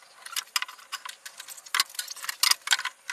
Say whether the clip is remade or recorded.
recorded